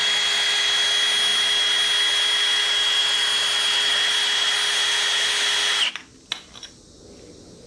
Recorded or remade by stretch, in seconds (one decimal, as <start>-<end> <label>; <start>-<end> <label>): 0.0-7.7 recorded